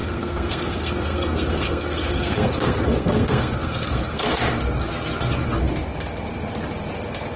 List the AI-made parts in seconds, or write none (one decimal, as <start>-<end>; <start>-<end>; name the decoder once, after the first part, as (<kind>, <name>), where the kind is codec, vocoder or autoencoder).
0.0-4.4 (codec, SNAC)